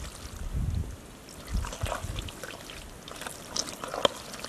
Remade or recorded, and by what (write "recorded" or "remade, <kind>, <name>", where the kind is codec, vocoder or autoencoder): recorded